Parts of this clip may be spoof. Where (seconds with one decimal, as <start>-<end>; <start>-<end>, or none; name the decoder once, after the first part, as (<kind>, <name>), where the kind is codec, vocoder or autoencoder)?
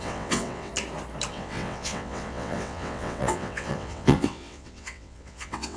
0.0-0.7 (vocoder, WaveNeXt); 1.3-5.8